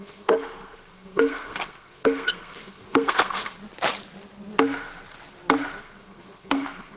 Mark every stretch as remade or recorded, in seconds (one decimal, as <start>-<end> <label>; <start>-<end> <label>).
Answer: 0.0-3.6 remade; 3.6-5.8 recorded; 5.8-7.0 remade